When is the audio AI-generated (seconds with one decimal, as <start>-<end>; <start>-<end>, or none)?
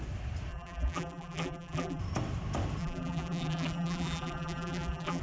0.5-2.0; 2.8-5.2